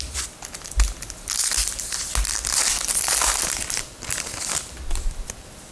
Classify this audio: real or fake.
real